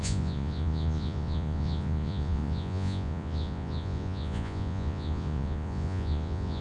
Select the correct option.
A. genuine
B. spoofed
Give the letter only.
B